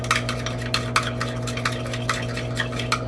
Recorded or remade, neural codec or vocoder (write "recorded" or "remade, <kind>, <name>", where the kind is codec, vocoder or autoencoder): recorded